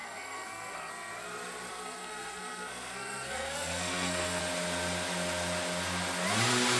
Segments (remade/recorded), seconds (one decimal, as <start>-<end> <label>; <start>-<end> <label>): 0.0-0.9 remade; 0.9-1.7 recorded; 1.7-4.4 remade; 4.4-6.8 recorded